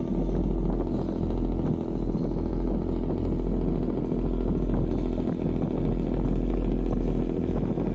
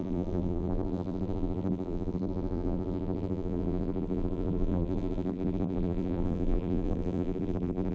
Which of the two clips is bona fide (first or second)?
first